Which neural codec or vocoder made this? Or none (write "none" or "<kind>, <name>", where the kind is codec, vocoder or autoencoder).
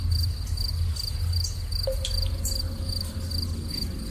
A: none